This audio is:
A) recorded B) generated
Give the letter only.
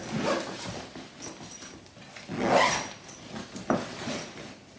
A